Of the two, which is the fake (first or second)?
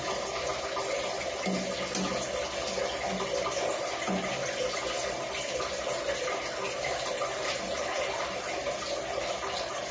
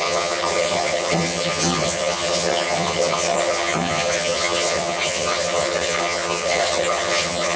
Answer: second